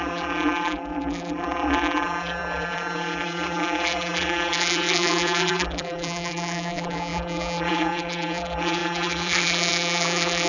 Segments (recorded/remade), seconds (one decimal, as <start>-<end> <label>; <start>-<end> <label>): 0.0-10.5 remade